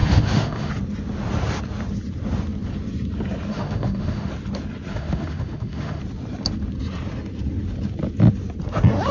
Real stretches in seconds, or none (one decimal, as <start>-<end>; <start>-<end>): 0.7-3.5; 4.3-4.9; 6.0-9.1